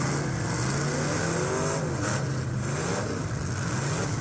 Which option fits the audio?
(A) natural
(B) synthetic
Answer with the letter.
A